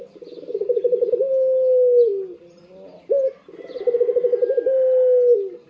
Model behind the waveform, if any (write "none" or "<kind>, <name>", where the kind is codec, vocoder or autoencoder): none